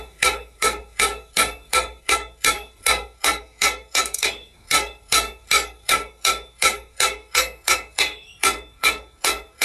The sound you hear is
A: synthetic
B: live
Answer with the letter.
A